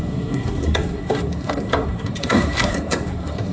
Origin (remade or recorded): remade